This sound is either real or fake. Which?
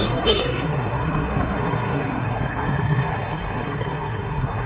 fake